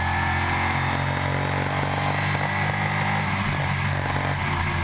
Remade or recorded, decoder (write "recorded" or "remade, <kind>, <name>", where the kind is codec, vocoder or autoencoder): recorded